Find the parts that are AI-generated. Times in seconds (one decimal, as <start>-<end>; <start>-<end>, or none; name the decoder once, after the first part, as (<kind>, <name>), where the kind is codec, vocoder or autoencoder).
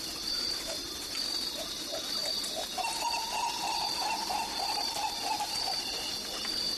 none